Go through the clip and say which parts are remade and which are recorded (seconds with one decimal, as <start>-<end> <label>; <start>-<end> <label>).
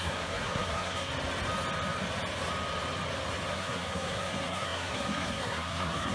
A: 0.0-1.1 remade; 1.1-3.5 recorded; 3.5-6.1 remade